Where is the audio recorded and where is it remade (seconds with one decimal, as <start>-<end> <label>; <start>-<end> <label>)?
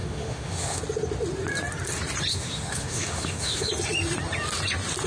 0.0-0.8 remade; 0.8-2.3 recorded; 2.3-3.7 remade; 3.7-5.1 recorded